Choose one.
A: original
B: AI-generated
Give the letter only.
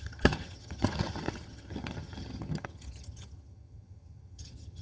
B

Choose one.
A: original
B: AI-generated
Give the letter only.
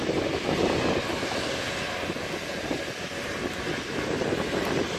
A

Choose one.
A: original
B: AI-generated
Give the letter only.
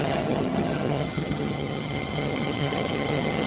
B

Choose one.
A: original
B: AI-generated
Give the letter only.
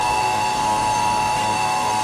B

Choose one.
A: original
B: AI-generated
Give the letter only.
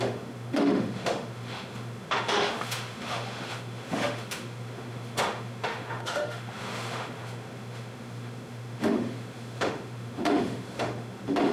B